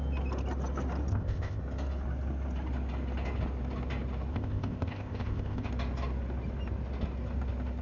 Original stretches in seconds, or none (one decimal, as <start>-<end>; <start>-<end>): 0.0-1.1; 1.6-4.3; 5.7-7.8